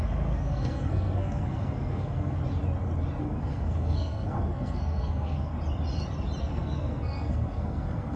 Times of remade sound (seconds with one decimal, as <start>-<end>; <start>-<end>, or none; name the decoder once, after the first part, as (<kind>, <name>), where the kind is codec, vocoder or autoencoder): 0.0-2.4 (codec, SNAC); 3.2-5.5; 6.4-8.2